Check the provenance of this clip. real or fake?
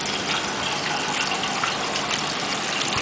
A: real